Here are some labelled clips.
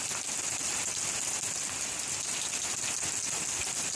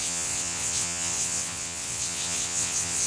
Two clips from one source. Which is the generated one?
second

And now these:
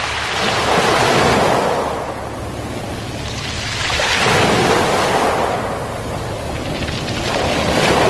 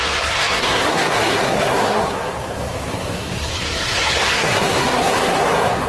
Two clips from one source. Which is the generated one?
second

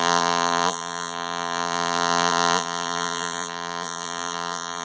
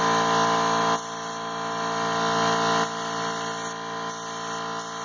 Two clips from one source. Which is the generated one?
first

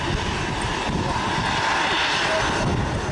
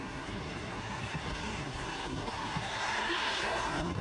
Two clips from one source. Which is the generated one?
second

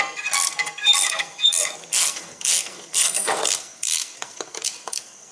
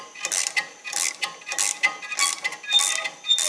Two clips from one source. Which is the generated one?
first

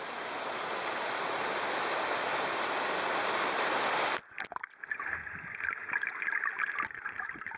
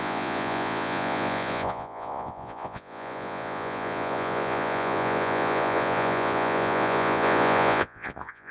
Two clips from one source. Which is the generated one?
second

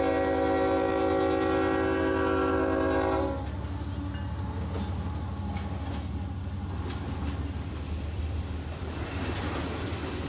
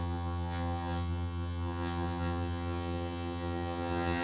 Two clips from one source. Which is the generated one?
second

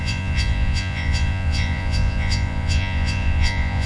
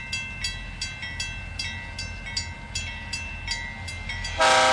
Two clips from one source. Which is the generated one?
first